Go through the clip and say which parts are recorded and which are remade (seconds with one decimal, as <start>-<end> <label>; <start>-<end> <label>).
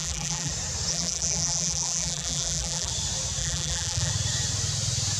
0.0-0.5 remade; 0.5-0.9 recorded; 0.9-2.9 remade; 2.9-3.4 recorded; 3.4-4.1 remade; 4.1-5.2 recorded